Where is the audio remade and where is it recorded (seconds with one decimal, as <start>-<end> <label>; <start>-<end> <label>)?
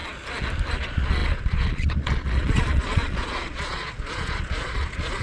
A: 0.0-0.7 recorded; 0.7-5.2 remade